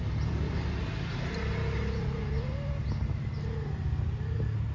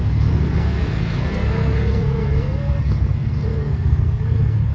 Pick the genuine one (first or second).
first